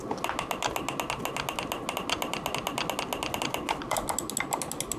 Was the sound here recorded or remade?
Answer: recorded